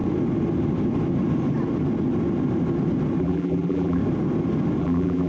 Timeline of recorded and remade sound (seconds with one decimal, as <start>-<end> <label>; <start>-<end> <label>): 0.0-3.2 recorded; 3.2-4.0 remade; 4.0-4.8 recorded; 4.8-5.3 remade